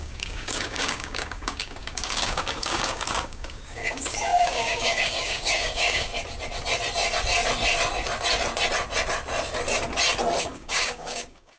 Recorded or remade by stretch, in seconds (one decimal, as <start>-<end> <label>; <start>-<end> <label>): 0.0-6.1 remade; 6.1-10.4 recorded; 10.4-11.6 remade